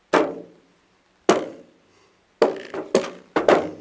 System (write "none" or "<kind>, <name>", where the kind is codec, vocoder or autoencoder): none